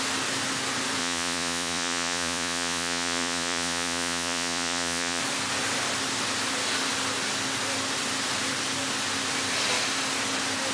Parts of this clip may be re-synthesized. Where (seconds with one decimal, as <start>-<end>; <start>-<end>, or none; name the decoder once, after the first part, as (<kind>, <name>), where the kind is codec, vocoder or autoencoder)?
1.0-5.2 (vocoder, Vocos)